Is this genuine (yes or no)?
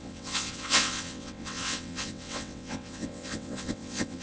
no